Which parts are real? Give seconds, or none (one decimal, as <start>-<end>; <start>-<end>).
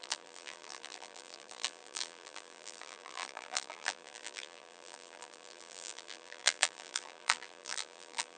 none